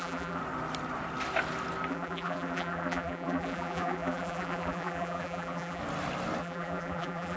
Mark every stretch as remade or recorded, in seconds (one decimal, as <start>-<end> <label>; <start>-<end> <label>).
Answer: 0.0-0.4 remade; 0.4-1.9 recorded; 1.9-5.8 remade; 5.8-6.4 recorded; 6.4-7.4 remade